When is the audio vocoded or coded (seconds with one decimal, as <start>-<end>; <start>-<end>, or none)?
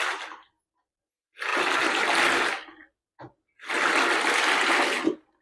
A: none